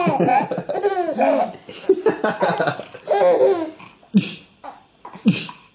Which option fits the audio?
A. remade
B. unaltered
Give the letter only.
B